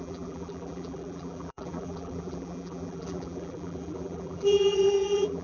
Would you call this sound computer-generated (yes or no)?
yes